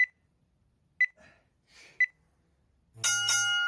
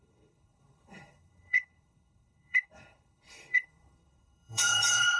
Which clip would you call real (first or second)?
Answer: first